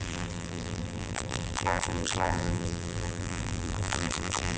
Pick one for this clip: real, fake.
fake